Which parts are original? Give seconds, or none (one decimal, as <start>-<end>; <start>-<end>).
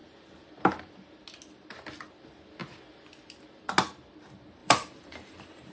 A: 0.0-4.6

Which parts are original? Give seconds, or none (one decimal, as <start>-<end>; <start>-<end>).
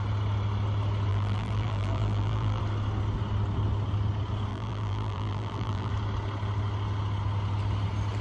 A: 0.0-1.1; 2.6-4.5; 5.9-8.2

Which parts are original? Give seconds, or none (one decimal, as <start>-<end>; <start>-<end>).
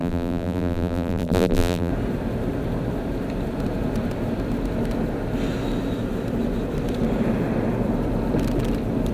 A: 1.9-9.1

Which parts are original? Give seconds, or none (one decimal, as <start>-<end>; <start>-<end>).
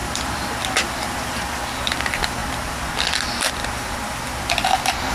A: 0.0-5.1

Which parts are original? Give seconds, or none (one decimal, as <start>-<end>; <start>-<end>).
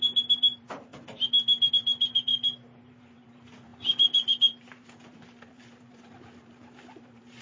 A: 2.3-2.8